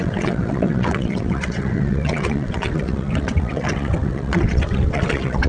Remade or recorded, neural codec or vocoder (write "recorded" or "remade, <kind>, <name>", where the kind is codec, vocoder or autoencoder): remade, vocoder, WaveNeXt